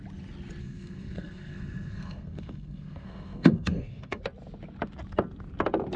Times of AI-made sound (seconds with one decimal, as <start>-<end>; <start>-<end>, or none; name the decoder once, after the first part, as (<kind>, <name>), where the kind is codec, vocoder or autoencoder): 0.6-4.2 (codec, SNAC)